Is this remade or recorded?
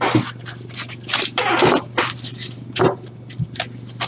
recorded